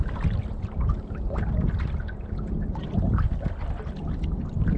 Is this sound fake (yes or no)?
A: no